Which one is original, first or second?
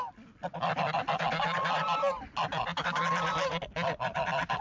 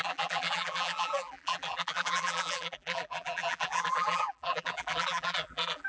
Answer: first